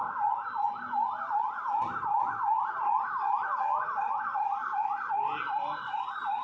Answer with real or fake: real